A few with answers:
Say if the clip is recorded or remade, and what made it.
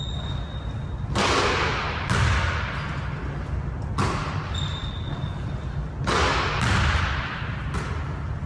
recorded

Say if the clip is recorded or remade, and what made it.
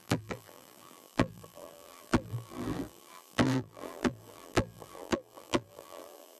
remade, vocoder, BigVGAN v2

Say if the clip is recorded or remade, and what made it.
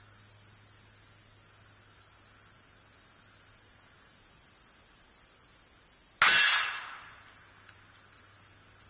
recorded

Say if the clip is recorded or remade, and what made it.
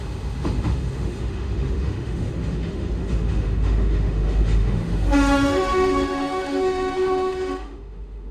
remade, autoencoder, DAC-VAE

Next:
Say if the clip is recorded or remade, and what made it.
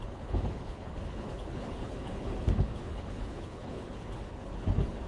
remade, codec, HILCodec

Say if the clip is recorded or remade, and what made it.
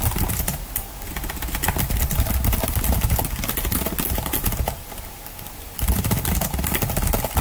recorded